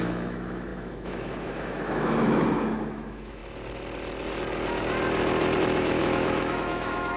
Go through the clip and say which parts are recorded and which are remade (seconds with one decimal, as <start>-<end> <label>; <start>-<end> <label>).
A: 0.0-3.4 remade; 3.4-5.6 recorded; 5.6-7.2 remade